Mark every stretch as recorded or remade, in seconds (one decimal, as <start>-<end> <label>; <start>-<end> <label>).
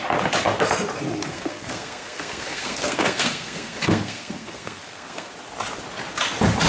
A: 0.0-1.3 recorded; 1.3-5.3 remade; 5.3-6.7 recorded